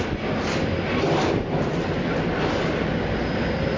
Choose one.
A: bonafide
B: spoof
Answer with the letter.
B